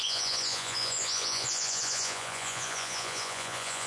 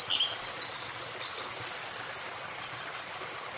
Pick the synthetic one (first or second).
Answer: first